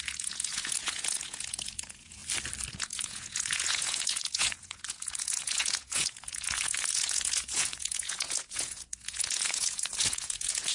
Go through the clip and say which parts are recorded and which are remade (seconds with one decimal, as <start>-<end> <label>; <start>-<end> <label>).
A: 0.0-2.2 remade; 2.2-2.7 recorded; 2.7-10.7 remade